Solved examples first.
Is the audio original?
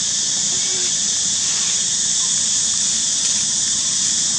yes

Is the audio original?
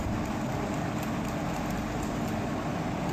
yes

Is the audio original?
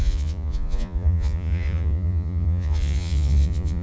no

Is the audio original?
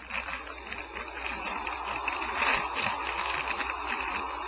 yes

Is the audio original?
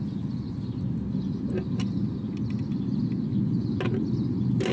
yes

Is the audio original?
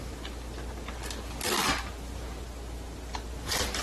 yes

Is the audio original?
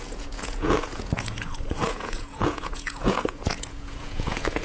no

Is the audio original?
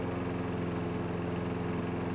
yes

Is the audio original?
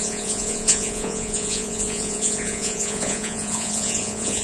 no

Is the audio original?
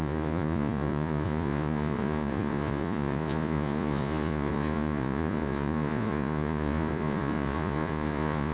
no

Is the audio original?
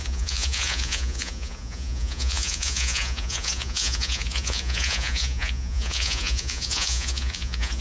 no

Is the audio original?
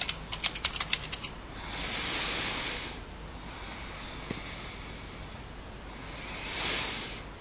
yes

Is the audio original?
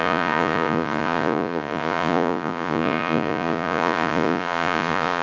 no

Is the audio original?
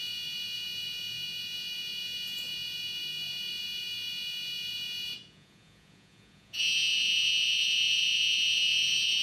no